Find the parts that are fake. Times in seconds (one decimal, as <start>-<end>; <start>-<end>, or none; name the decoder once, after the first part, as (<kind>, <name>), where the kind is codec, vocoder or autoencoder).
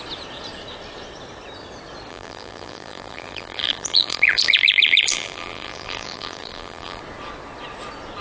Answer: 2.1-7.0 (vocoder, BigVGAN v2)